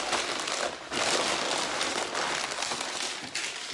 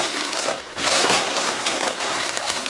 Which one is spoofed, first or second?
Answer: second